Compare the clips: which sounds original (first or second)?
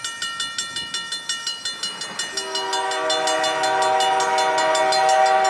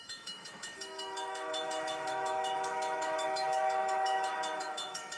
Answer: first